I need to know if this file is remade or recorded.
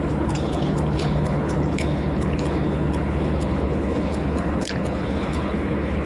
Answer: remade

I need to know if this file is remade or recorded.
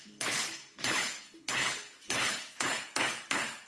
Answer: remade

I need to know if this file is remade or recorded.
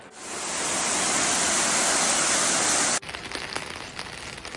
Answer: recorded